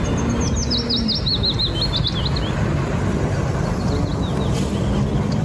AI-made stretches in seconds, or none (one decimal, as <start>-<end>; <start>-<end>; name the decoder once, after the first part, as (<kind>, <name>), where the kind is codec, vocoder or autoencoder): none